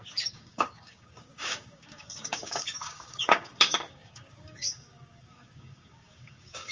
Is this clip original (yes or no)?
no